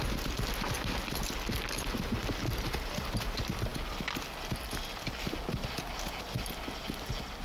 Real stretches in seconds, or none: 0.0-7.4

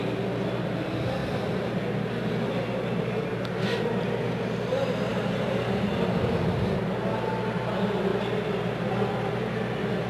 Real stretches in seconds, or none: 0.0-5.1; 5.9-10.1

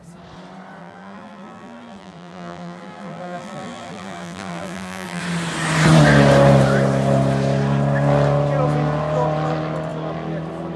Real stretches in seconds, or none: 0.0-0.8; 5.2-10.8